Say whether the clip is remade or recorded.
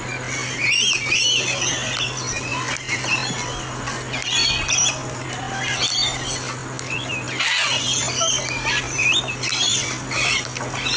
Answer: recorded